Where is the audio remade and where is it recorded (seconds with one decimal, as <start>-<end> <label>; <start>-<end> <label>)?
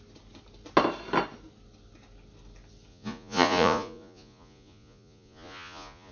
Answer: 0.0-2.9 recorded; 2.9-6.1 remade